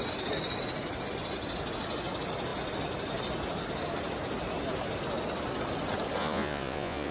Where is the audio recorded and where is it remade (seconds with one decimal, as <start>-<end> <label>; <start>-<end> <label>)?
0.0-6.2 recorded; 6.2-7.1 remade